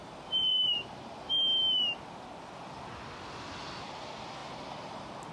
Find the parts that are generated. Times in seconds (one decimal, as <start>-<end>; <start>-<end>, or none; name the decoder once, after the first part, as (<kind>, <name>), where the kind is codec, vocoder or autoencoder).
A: 0.0-1.0 (vocoder, BigVGAN v2); 4.4-5.3